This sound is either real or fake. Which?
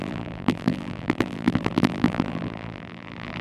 fake